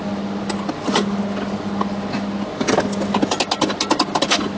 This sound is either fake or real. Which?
real